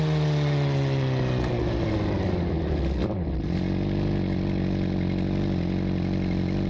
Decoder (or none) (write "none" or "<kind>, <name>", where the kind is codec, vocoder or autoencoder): none